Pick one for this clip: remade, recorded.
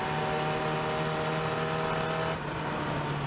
recorded